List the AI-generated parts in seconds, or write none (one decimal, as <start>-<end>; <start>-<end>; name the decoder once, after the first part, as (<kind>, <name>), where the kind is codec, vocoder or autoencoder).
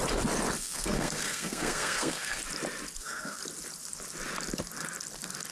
0.6-2.4 (codec, SNAC); 3.0-3.4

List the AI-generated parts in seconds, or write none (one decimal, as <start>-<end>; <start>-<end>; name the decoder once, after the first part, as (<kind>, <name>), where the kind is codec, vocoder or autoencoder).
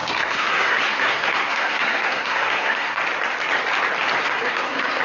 0.0-3.0 (codec, SNAC); 4.2-5.0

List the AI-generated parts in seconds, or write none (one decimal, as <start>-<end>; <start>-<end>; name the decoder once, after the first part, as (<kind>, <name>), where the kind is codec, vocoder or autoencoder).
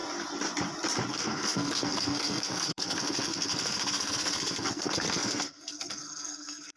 1.1-6.8 (codec, SNAC)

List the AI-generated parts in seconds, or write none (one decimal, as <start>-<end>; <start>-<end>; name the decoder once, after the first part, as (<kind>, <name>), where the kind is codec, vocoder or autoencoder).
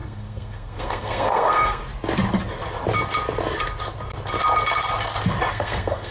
0.0-1.8 (codec, SNAC); 5.5-6.1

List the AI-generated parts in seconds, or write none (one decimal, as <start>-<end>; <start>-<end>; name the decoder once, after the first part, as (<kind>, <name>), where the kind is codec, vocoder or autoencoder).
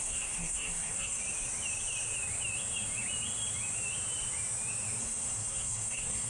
0.0-1.2 (codec, SNAC); 5.0-6.3